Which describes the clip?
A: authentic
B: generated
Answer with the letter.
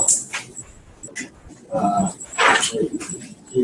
A